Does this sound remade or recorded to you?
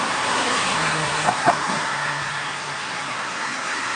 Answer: remade